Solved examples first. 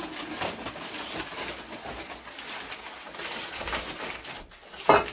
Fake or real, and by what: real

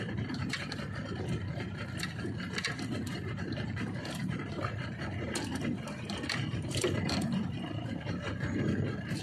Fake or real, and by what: fake, vocoder, BigVGAN v2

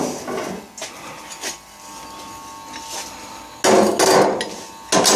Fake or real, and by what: real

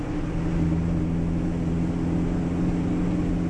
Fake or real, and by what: real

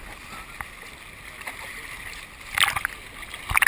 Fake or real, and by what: real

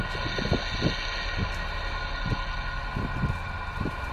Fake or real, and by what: real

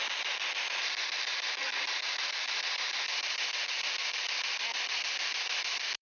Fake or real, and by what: fake, vocoder, BigVGAN v2